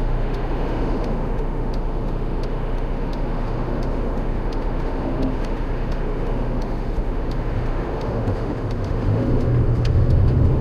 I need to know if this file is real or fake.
fake